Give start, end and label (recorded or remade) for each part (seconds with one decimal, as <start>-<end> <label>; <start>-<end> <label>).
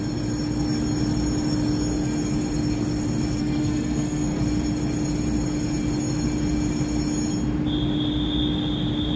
0.0-3.4 recorded; 3.4-4.4 remade; 4.4-9.2 recorded